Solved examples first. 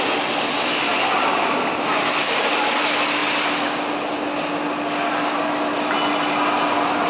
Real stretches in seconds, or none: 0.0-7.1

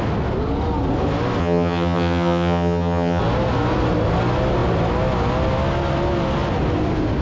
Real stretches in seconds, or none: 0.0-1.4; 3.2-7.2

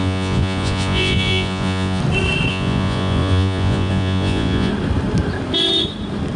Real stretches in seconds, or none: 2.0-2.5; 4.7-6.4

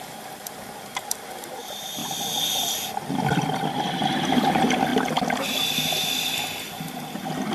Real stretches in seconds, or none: 2.0-4.3; 4.9-7.5

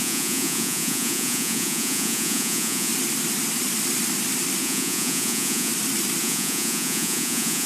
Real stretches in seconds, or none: 2.9-4.6; 5.7-6.2

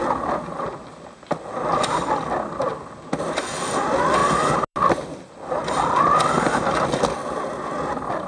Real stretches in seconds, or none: 0.0-8.3

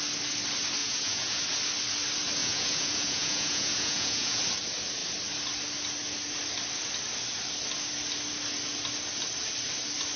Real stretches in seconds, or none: 0.0-0.8; 1.4-2.4; 4.4-10.2

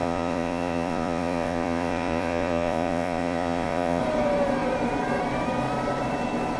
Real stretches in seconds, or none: 4.0-6.6